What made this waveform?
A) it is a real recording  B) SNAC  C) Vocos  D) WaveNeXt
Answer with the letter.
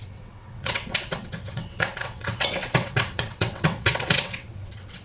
D